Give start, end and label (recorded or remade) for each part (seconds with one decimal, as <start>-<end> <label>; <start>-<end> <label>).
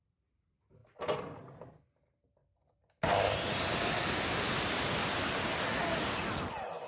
0.0-0.8 remade; 0.8-1.7 recorded; 1.7-2.4 remade; 2.4-6.5 recorded; 6.5-6.9 remade